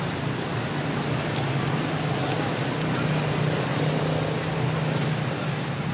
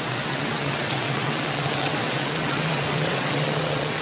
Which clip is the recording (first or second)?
first